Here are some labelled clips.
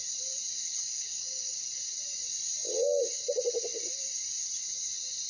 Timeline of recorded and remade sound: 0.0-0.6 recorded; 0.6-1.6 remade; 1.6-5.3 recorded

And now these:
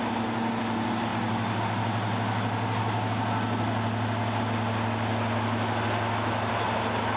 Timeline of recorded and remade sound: 0.0-7.2 recorded